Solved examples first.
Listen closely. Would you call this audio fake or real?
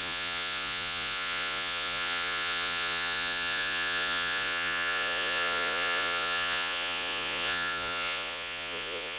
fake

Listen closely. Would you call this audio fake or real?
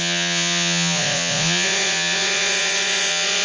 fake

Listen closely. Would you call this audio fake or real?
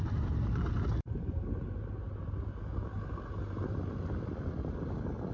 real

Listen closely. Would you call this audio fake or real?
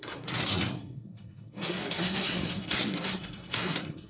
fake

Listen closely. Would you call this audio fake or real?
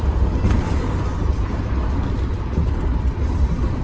real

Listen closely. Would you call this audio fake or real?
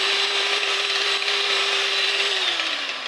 fake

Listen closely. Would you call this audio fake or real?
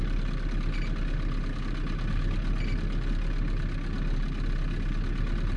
real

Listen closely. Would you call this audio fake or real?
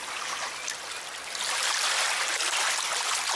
real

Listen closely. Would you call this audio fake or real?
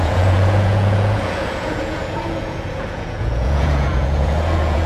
fake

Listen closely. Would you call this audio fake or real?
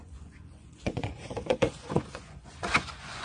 fake